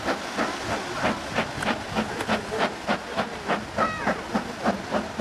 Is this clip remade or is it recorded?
recorded